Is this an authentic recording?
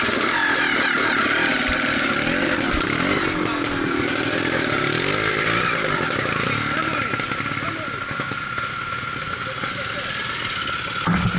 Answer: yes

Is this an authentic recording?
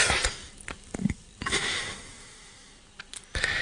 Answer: yes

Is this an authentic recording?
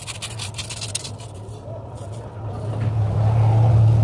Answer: yes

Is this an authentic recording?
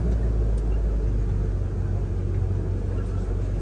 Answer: yes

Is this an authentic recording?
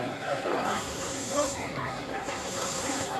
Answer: no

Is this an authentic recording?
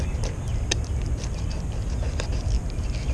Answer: yes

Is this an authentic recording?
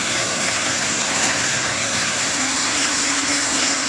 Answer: no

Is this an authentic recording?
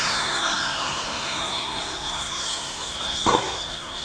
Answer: no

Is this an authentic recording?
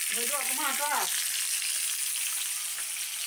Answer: yes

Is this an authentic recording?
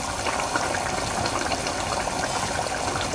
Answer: yes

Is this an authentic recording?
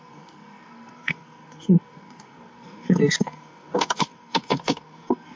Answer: no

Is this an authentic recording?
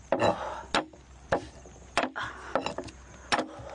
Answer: yes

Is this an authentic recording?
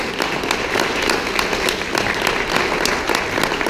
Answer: yes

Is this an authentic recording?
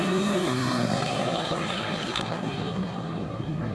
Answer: no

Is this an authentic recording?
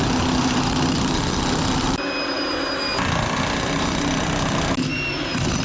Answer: yes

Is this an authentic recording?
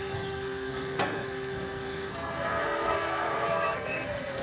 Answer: no